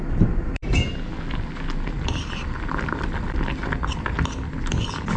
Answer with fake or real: real